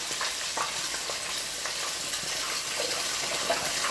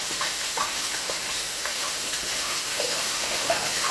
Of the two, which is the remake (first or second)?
second